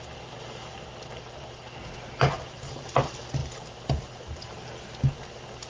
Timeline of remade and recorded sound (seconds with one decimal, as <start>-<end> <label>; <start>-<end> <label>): 0.0-5.7 recorded